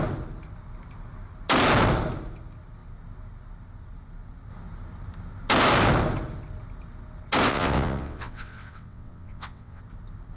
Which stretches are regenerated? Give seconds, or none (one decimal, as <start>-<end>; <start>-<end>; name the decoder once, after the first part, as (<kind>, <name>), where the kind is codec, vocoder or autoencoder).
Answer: 7.5-9.8 (vocoder, WaveNeXt)